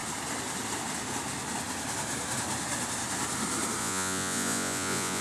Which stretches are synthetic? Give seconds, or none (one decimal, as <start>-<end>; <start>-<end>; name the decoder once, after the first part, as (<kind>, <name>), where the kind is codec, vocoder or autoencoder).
3.8-5.2 (vocoder, Vocos)